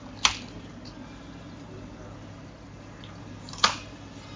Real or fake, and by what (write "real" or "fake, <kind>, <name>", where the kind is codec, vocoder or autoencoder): real